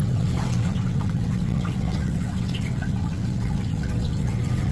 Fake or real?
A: fake